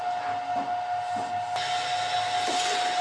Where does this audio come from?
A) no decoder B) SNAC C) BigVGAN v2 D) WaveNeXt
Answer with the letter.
A